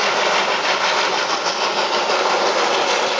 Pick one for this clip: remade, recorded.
recorded